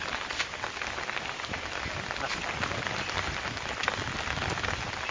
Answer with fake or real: real